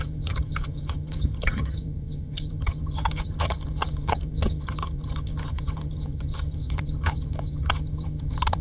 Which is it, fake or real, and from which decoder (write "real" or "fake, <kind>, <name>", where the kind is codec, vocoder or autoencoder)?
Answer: fake, vocoder, HiFi-GAN